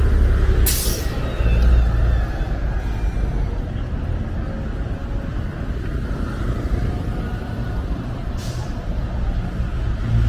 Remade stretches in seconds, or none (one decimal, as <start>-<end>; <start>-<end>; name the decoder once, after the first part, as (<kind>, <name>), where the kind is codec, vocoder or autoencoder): 5.0-9.0 (vocoder, BigVGAN v2)